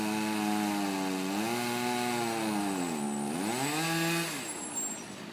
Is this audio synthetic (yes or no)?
no